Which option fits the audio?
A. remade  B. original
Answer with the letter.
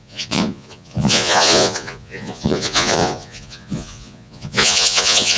A